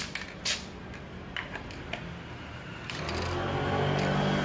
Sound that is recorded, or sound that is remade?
recorded